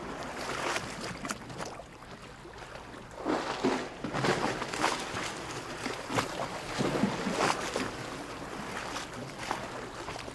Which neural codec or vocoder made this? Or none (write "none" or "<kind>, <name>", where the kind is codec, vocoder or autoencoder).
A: none